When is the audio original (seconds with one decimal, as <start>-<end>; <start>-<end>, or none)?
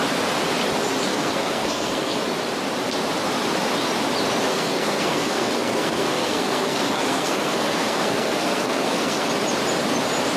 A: 0.0-1.1; 2.2-4.5; 9.3-10.4